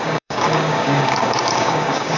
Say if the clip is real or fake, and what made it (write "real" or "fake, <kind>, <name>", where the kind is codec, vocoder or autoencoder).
fake, codec, DAC